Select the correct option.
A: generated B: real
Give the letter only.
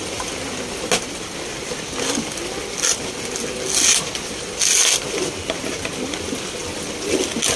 B